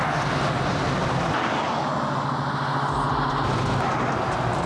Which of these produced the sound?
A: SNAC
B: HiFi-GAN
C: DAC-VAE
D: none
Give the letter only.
D